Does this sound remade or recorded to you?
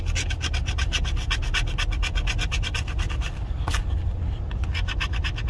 recorded